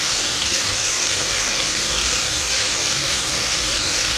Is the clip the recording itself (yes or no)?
no